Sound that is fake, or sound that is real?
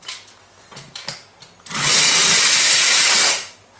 real